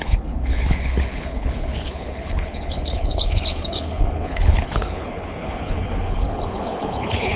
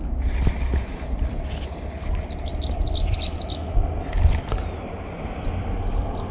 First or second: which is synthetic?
first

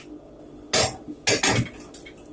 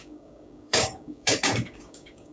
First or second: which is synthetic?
second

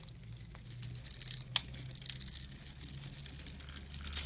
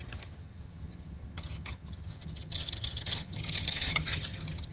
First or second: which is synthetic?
second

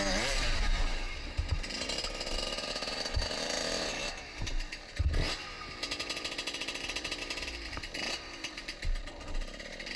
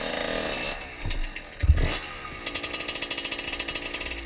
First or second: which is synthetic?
first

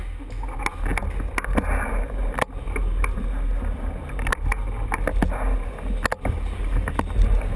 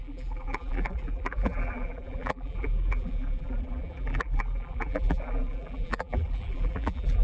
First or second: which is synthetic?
second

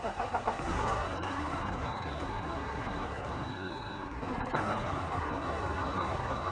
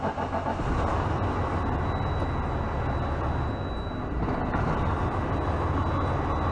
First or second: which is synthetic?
first